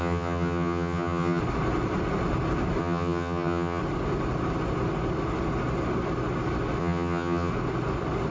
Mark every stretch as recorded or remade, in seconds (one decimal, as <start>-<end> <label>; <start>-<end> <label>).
0.0-1.4 remade; 1.4-2.8 recorded; 2.8-3.8 remade; 3.8-6.8 recorded; 6.8-7.5 remade; 7.5-8.3 recorded